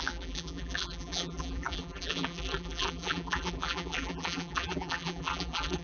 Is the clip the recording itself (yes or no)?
no